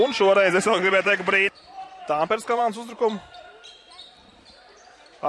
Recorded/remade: remade